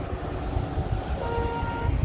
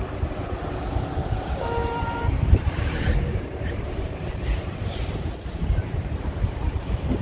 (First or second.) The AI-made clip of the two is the second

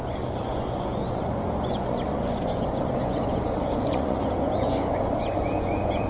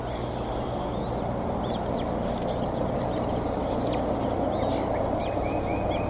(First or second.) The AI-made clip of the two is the first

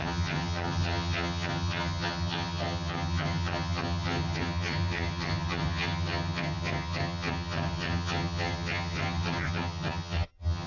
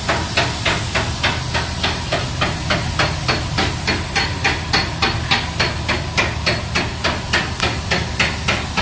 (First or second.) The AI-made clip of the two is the first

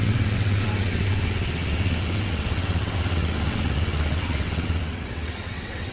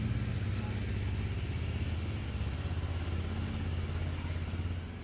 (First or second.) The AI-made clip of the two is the first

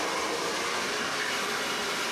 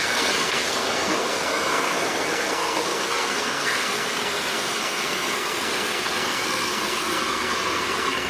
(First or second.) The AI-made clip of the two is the second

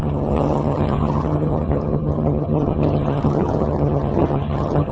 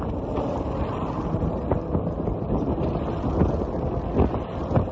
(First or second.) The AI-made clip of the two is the first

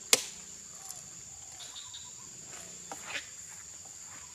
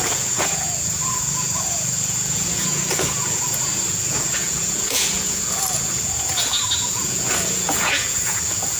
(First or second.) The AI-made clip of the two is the second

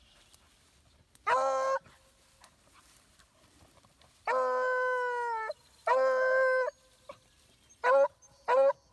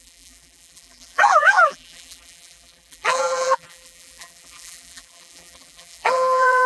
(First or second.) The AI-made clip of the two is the second